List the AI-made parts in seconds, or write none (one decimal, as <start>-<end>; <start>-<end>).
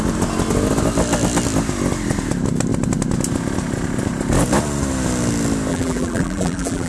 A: 5.7-6.9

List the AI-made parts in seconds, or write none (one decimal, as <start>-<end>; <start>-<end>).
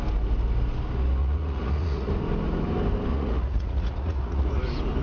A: 1.2-2.1; 3.1-4.6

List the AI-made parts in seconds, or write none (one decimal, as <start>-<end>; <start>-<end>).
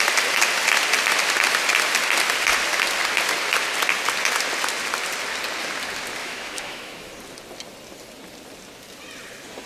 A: 6.2-7.1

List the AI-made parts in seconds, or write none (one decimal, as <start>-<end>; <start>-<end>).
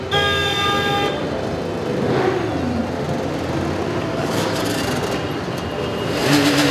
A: 4.0-4.8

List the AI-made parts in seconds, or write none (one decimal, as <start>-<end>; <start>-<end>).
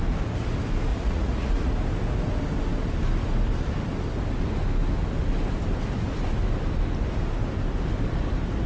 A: 0.9-1.7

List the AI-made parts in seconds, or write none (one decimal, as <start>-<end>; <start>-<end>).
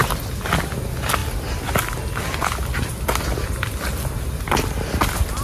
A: none